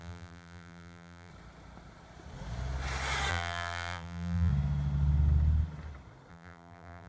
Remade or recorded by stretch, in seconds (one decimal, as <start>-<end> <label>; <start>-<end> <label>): 0.0-1.3 remade; 1.3-3.3 recorded; 3.3-4.5 remade; 4.5-6.3 recorded; 6.3-7.1 remade